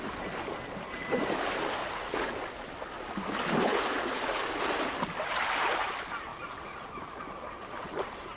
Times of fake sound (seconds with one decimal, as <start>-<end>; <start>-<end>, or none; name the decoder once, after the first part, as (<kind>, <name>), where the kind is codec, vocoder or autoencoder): 1.8-2.3 (vocoder, Vocos); 3.7-4.4; 6.3-7.3